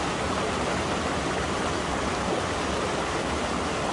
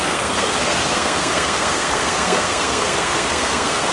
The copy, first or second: second